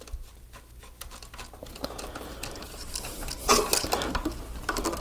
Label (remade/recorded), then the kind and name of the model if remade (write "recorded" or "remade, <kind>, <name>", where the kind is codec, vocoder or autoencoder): recorded